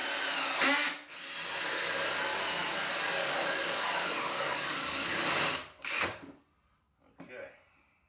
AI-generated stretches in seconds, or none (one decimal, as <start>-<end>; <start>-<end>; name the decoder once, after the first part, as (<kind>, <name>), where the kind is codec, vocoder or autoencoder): 2.3-6.4 (codec, DAC)